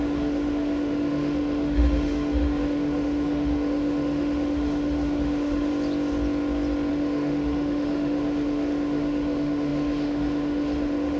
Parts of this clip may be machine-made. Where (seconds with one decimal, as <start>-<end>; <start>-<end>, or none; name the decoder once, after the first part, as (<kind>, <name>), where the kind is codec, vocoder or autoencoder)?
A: 0.0-5.7 (autoencoder, DAC-VAE); 6.9-11.2